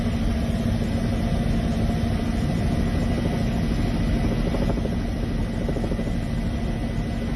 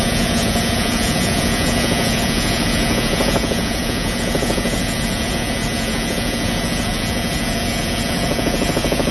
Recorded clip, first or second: first